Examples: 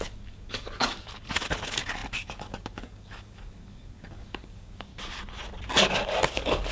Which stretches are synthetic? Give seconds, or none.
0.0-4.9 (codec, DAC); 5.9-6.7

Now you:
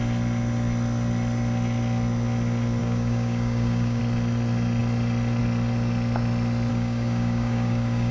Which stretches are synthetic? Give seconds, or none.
2.8-4.0 (codec, DAC); 6.7-8.1

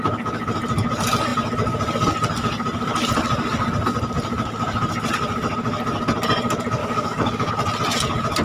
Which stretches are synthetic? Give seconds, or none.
6.8-7.5 (codec, DAC)

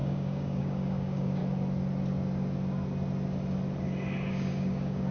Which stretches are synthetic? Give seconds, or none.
0.0-1.4 (codec, DAC); 4.3-5.1

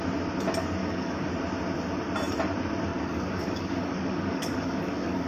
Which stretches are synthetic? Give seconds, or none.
0.8-1.3 (codec, DAC); 2.9-5.3